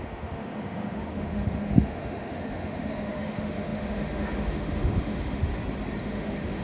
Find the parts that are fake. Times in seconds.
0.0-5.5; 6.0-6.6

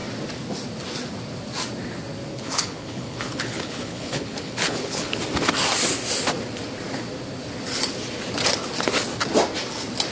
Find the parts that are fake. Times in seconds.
2.3-5.2

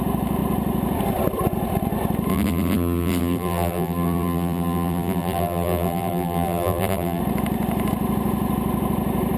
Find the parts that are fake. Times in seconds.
2.3-7.2

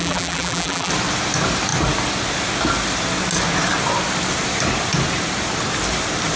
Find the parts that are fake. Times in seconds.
0.0-0.9

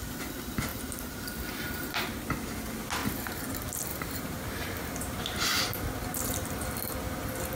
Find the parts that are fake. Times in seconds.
0.7-1.2; 3.9-5.2